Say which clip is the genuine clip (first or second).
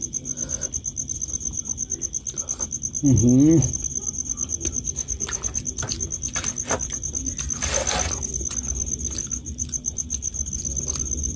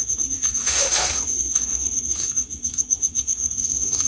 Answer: first